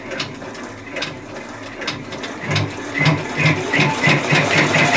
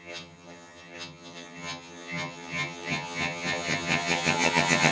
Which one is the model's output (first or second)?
second